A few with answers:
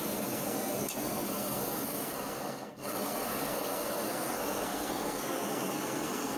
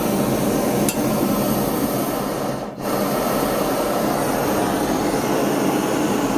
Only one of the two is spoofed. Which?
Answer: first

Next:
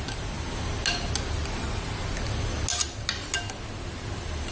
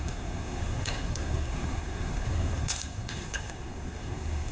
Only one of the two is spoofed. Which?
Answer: second